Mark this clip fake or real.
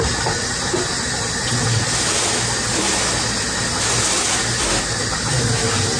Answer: real